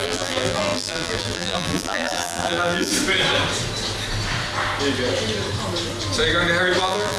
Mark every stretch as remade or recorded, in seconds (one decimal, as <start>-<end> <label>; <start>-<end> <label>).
0.0-2.9 remade; 2.9-6.8 recorded; 6.8-7.2 remade